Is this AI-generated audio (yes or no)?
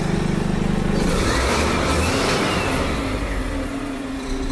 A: no